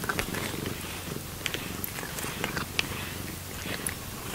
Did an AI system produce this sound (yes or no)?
no